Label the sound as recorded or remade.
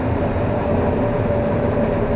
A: recorded